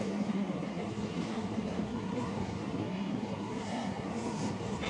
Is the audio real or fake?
fake